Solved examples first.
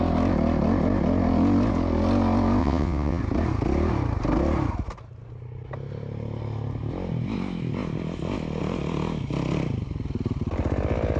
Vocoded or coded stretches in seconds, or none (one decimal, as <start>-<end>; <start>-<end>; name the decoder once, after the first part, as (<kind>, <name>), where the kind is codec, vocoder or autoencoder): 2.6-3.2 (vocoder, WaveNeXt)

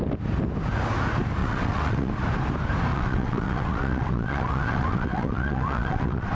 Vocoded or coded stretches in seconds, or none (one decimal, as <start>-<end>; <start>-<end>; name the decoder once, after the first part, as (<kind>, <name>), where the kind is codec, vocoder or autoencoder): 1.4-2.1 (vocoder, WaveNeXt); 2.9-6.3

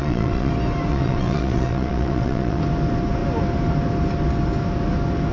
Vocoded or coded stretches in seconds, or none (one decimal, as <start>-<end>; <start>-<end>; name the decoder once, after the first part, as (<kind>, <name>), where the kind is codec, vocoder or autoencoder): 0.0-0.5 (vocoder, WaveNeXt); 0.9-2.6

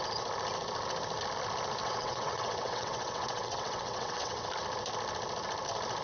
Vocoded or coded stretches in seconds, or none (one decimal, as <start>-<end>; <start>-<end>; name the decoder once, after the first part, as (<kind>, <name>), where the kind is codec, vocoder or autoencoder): 1.8-4.5 (vocoder, WaveNeXt)

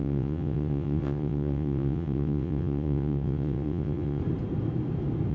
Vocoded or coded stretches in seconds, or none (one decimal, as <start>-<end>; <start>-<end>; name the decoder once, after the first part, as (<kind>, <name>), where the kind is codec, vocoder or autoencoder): 0.0-4.2 (vocoder, WaveNeXt)

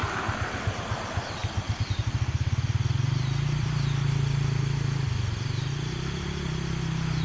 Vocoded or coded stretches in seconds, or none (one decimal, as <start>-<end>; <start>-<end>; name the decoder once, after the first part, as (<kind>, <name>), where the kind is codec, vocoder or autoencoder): none

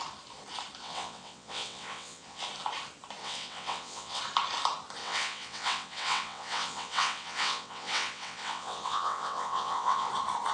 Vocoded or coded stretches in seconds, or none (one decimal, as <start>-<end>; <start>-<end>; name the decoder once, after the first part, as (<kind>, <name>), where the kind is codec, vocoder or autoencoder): 0.8-2.4 (vocoder, WaveNeXt); 3.2-4.2; 5.0-10.1